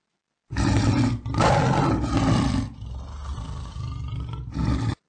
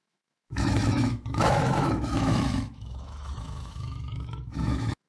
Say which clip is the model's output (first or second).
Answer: second